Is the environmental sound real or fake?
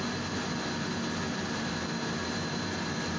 real